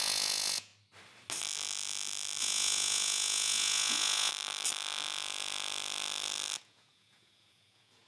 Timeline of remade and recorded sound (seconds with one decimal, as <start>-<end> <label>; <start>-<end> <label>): 0.0-0.7 remade; 0.7-2.4 recorded; 2.4-4.3 remade; 4.3-6.6 recorded; 6.6-8.1 remade